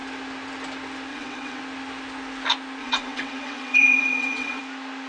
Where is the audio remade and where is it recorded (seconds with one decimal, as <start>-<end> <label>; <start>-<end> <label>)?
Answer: 0.0-1.1 recorded; 1.1-1.6 remade; 1.6-2.8 recorded; 2.8-4.6 remade; 4.6-5.1 recorded